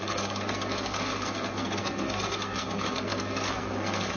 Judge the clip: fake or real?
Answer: fake